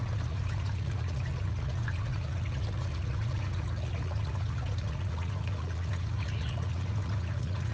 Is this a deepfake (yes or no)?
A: yes